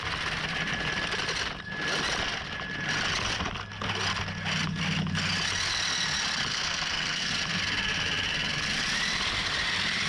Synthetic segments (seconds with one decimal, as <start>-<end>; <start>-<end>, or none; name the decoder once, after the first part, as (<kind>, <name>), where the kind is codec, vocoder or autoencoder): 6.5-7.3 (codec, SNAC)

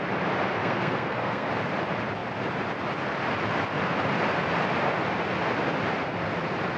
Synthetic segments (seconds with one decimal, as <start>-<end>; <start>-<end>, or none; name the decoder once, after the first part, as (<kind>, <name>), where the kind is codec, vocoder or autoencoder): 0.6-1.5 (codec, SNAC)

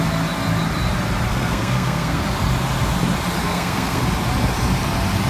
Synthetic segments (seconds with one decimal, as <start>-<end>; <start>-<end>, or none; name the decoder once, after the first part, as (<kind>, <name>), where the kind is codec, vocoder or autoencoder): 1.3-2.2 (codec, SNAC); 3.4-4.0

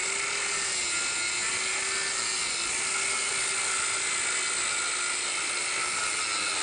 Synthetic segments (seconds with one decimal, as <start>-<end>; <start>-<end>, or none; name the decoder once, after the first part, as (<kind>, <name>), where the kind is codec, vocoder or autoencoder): none

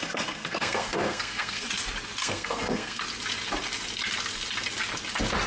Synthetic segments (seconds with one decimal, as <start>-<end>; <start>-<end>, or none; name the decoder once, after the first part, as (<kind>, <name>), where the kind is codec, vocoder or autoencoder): 0.0-1.7 (codec, SNAC); 2.2-3.0